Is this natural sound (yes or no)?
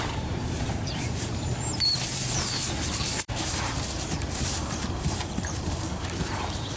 no